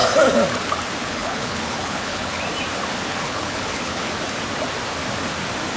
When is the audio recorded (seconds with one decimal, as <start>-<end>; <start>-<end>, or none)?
0.0-1.0; 2.4-3.1; 4.2-5.8